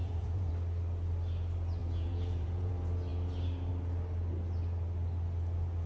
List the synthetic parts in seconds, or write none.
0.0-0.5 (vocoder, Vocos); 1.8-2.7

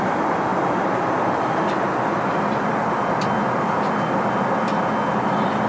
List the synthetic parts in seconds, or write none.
none

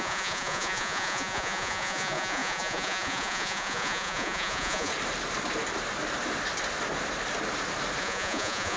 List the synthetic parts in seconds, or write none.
0.0-4.9 (vocoder, Vocos); 8.0-8.8

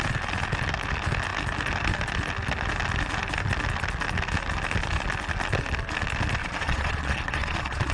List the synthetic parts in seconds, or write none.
6.4-7.9 (vocoder, Vocos)

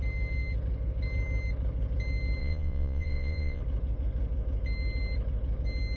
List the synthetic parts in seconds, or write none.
2.4-3.6 (vocoder, Vocos)